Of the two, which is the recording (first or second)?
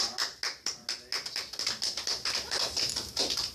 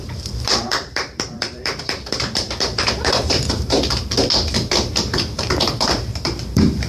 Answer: first